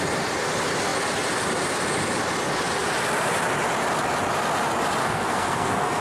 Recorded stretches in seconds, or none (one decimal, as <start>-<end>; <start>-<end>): 0.0-5.0

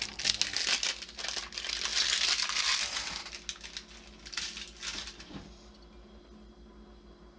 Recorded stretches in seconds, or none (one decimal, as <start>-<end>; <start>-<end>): 0.0-7.4

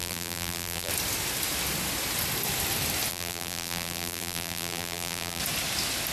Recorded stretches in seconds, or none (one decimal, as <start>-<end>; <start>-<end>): 0.9-3.1; 5.4-6.1